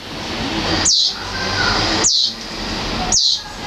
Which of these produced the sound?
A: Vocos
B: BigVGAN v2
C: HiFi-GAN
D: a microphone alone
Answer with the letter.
D